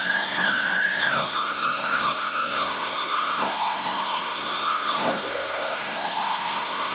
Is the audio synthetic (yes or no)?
yes